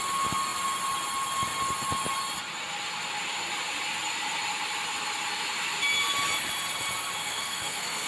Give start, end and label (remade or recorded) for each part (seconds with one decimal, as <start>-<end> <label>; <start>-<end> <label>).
0.0-7.2 recorded; 7.2-8.1 remade